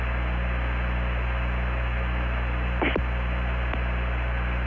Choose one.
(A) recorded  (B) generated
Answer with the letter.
A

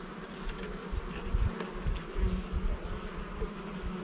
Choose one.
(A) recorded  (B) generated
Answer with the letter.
A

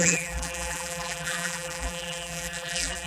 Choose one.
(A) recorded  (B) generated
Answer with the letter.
B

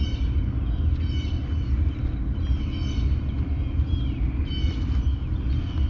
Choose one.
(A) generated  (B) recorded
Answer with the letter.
B